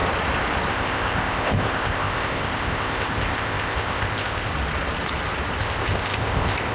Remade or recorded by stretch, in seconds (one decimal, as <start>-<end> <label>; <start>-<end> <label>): 0.0-0.7 recorded; 0.7-4.5 remade; 4.5-5.6 recorded; 5.6-6.7 remade

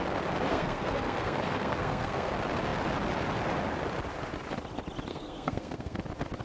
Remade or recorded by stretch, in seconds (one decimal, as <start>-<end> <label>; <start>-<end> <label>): 0.0-0.5 recorded; 0.5-2.3 remade; 2.3-5.1 recorded; 5.1-6.0 remade; 6.0-6.4 recorded

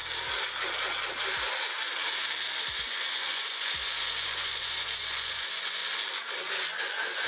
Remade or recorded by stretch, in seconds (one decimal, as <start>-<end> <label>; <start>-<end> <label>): 0.0-2.8 recorded; 2.8-5.8 remade; 5.8-6.5 recorded; 6.5-7.3 remade

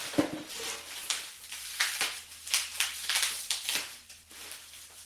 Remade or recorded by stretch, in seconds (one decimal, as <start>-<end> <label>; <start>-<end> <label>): 0.0-5.1 recorded

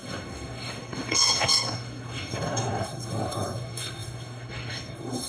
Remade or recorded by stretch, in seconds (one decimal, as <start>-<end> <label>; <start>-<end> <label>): 0.0-5.3 remade

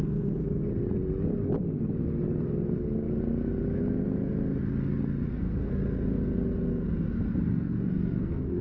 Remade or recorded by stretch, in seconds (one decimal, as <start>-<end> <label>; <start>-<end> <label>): 0.0-0.4 remade; 0.4-5.3 recorded; 5.3-5.7 remade; 5.7-7.5 recorded; 7.5-8.6 remade

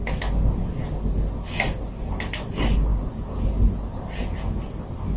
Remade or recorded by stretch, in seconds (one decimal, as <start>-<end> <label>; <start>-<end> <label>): 0.0-5.2 recorded

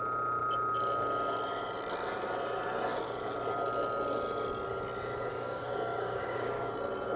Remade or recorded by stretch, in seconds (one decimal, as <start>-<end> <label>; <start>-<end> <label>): 0.0-5.3 recorded; 5.3-6.7 remade; 6.7-7.2 recorded